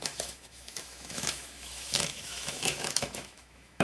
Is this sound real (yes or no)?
no